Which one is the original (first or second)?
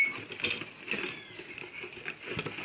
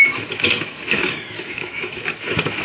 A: first